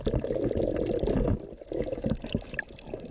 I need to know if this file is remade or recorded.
recorded